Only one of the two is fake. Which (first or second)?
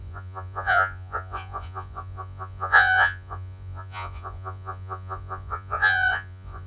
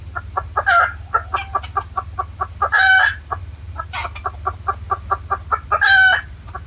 first